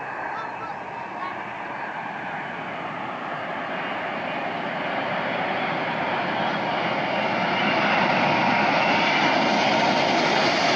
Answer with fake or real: real